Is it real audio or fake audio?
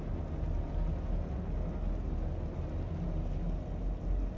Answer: real